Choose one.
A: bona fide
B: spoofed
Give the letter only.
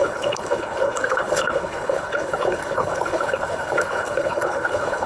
B